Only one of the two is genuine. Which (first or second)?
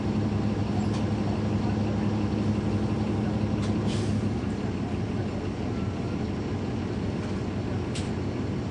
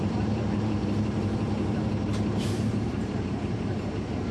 first